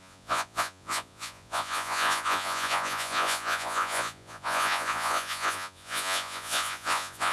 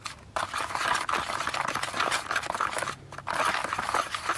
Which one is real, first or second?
second